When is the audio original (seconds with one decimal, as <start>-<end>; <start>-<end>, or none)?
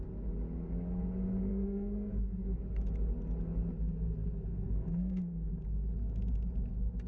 0.0-1.5; 2.6-4.5; 5.5-7.1